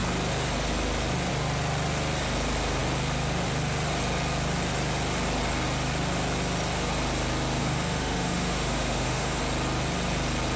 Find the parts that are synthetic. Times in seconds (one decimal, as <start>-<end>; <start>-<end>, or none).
7.6-9.4